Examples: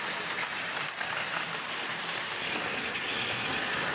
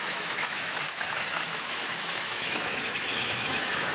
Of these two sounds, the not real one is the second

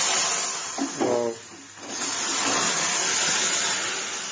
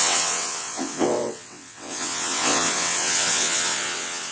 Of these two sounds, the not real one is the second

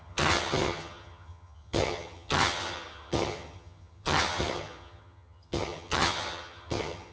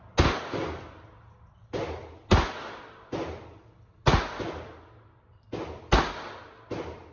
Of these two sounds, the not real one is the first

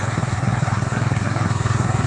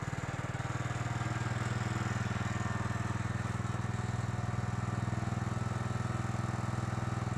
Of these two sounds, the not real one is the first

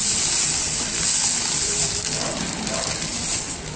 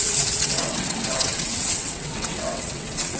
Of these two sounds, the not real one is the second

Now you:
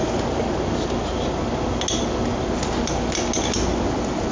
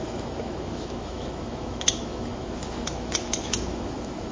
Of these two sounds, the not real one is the second